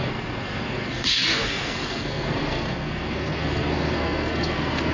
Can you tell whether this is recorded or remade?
remade